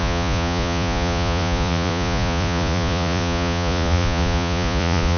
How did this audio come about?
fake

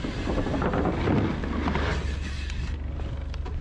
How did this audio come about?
real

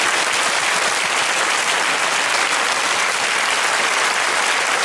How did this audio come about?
real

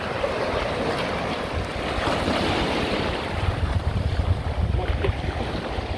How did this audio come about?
real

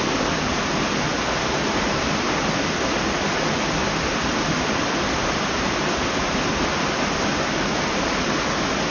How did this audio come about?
real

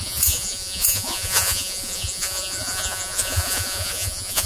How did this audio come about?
fake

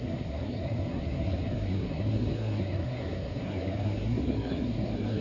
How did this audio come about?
fake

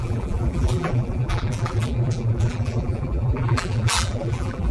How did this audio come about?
fake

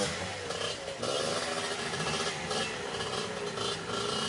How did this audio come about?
real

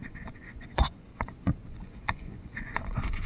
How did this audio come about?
fake